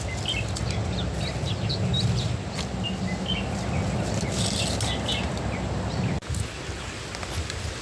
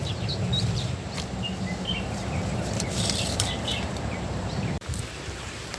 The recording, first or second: first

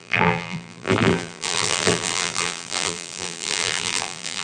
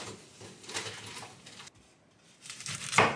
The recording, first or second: second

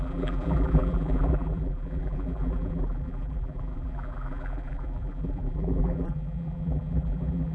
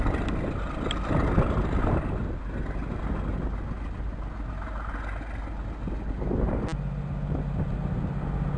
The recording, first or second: second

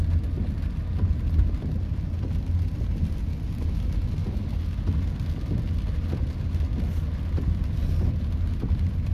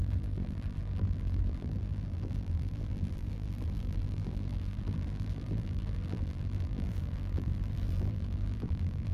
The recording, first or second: first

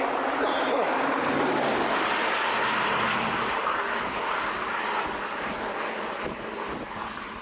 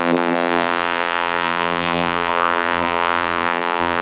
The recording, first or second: first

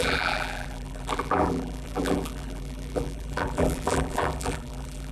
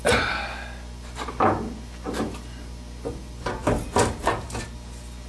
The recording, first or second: second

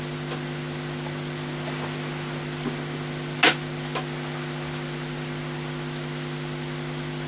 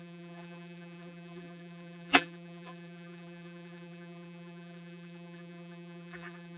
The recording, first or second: first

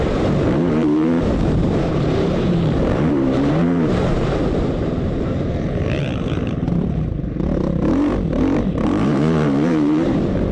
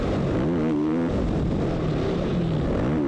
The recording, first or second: second